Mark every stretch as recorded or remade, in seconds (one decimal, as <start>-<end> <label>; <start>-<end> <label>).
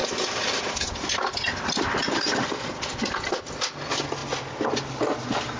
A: 0.0-5.6 recorded